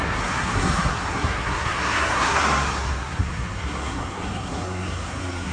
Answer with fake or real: fake